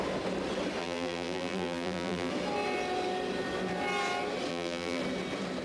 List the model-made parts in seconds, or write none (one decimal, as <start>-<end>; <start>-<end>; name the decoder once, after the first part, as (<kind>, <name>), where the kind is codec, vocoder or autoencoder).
0.8-2.3 (vocoder, BigVGAN v2); 4.5-5.0

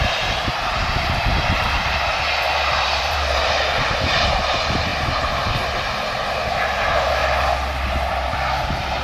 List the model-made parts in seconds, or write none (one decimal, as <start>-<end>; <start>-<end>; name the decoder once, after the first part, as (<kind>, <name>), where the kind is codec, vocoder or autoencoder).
0.0-7.2 (vocoder, BigVGAN v2); 8.1-9.0

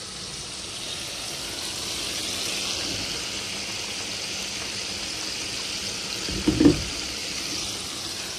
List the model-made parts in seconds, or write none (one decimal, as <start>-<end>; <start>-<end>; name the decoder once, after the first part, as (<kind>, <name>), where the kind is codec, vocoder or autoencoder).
0.0-2.2 (vocoder, BigVGAN v2); 4.1-7.2

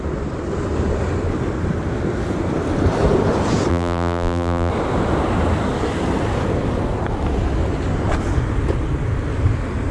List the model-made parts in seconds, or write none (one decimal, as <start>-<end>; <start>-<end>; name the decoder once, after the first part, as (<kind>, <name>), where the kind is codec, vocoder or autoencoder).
3.7-4.7 (vocoder, BigVGAN v2)

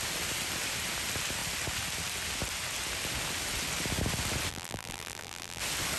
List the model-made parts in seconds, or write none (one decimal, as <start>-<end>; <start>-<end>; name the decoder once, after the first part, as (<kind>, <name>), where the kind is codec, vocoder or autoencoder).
4.5-5.6 (vocoder, BigVGAN v2)

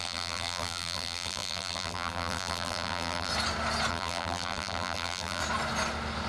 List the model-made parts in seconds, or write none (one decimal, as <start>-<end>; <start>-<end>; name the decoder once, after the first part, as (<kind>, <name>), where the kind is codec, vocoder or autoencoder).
0.0-3.3 (vocoder, BigVGAN v2); 3.9-5.4

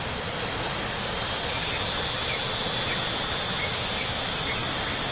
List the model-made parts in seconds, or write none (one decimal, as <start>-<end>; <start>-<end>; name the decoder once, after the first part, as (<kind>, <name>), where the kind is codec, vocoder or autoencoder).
4.6-5.1 (vocoder, BigVGAN v2)

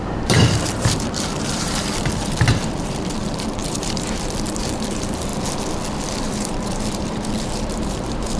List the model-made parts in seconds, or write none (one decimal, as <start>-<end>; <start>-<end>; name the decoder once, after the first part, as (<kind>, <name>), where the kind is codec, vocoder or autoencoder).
0.0-5.3 (vocoder, BigVGAN v2); 6.2-8.4